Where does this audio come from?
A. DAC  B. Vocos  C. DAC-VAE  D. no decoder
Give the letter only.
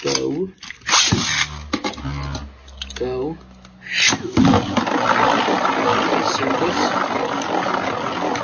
D